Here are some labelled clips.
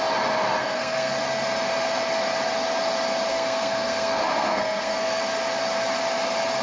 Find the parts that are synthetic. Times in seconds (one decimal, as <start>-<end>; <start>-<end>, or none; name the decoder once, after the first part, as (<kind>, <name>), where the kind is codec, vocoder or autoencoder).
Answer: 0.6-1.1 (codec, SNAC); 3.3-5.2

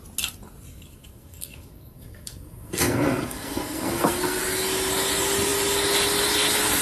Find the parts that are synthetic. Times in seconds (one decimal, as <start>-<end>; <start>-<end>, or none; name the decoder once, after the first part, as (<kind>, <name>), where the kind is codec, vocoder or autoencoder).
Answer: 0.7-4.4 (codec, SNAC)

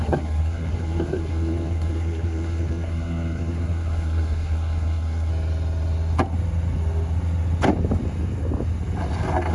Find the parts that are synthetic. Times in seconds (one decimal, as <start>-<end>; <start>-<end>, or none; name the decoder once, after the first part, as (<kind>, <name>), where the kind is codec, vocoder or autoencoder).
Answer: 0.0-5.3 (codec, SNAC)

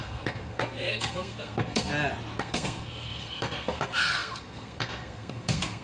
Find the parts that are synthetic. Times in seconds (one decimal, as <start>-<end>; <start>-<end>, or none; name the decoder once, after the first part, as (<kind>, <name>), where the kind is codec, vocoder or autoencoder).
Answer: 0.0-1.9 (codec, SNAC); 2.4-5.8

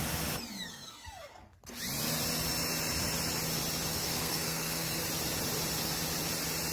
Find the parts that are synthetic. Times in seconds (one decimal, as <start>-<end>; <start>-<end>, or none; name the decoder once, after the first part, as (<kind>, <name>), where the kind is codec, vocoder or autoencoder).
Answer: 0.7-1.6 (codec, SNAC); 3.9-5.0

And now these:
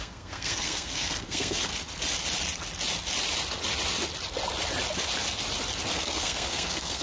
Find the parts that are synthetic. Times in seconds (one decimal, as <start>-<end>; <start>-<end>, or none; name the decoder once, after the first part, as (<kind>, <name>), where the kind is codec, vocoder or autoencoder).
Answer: 0.0-1.7 (codec, SNAC); 5.9-7.0

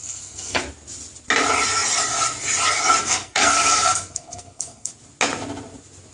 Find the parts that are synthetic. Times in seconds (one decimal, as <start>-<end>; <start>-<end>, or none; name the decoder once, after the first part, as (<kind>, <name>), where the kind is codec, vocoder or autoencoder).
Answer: 0.0-0.6 (codec, SNAC); 3.0-4.9